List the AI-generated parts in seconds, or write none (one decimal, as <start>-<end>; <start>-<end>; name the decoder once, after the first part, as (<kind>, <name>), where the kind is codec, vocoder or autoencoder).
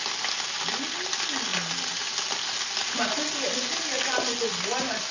none